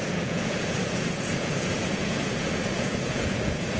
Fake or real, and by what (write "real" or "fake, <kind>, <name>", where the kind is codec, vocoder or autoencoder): fake, vocoder, Vocos